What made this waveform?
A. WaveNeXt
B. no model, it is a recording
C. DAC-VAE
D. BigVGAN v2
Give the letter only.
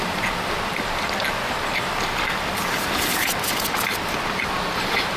D